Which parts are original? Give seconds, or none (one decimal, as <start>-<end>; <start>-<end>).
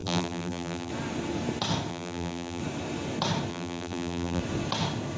0.9-1.9; 2.6-3.5; 4.4-5.2